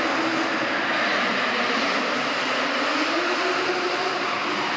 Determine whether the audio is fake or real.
real